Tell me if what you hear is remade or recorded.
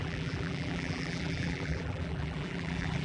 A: remade